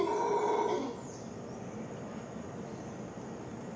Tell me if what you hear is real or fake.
real